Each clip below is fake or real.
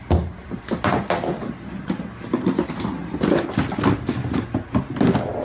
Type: real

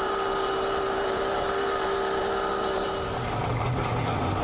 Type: fake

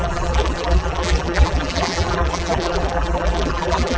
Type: fake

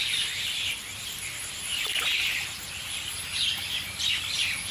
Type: fake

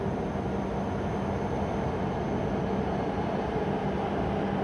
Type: real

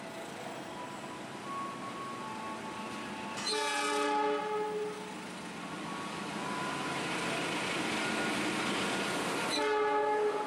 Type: real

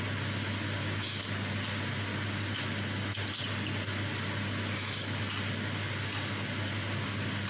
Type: real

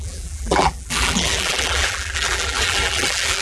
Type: fake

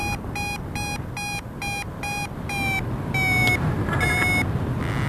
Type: real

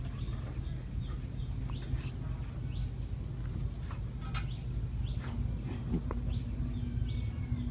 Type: real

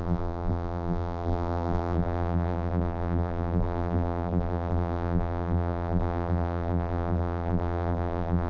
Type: fake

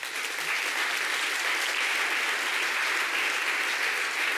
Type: real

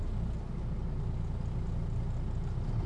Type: real